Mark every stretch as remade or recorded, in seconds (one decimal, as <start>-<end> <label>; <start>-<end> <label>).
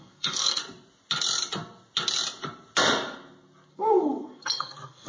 0.0-0.6 remade; 0.6-3.7 recorded; 3.7-5.1 remade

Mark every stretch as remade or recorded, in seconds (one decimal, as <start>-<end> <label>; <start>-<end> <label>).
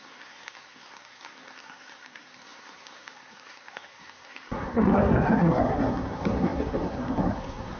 0.0-7.8 remade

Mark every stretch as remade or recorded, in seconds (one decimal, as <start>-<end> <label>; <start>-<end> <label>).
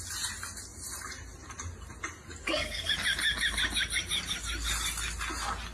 0.0-2.4 recorded; 2.4-2.9 remade; 2.9-5.7 recorded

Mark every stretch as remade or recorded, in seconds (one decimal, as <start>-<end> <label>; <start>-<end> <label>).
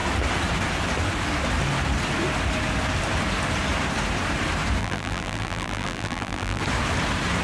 0.0-4.8 recorded; 4.8-6.6 remade; 6.6-7.4 recorded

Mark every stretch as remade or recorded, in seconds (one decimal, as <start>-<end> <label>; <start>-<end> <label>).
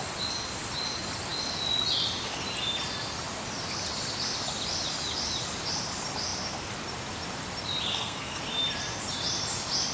0.0-7.9 recorded; 7.9-8.4 remade; 8.4-9.9 recorded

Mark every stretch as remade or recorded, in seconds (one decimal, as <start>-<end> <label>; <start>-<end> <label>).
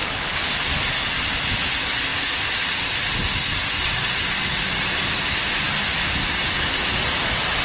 0.0-0.5 remade; 0.5-7.6 recorded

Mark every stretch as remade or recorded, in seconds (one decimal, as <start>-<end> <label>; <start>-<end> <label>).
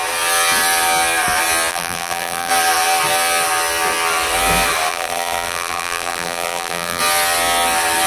0.0-1.7 recorded; 1.7-2.5 remade; 2.5-4.9 recorded; 4.9-7.0 remade; 7.0-8.1 recorded